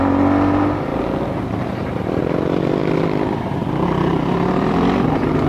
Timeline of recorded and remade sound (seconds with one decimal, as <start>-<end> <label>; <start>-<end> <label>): 0.0-5.5 recorded